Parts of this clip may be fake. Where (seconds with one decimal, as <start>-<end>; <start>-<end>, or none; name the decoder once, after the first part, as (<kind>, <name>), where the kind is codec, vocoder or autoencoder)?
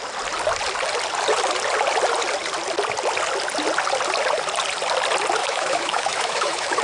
5.4-6.8 (autoencoder, DAC-VAE)